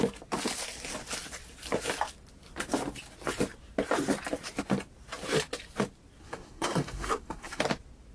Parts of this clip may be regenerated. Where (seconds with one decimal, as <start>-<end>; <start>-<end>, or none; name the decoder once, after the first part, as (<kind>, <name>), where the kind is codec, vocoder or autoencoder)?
6.2-7.6 (codec, SNAC)